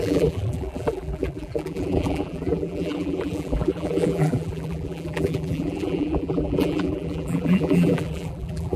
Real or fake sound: fake